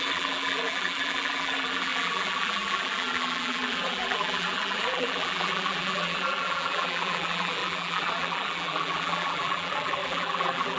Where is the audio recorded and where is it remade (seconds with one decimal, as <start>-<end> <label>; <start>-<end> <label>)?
0.0-10.8 remade